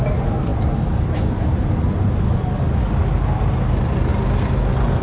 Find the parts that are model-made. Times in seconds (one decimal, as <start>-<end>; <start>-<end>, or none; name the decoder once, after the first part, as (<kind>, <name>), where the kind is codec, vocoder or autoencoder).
none